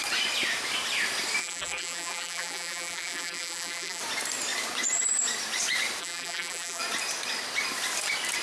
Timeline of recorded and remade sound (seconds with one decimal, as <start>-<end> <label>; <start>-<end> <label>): 0.0-1.4 recorded; 1.4-4.0 remade; 4.0-6.0 recorded; 6.0-6.8 remade; 6.8-8.4 recorded